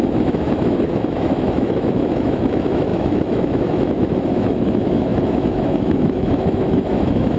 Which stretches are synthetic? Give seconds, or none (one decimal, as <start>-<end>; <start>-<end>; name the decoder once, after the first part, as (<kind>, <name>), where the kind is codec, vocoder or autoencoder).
0.0-7.4 (autoencoder, DAC-VAE)